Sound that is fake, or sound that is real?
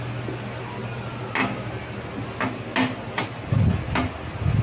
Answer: real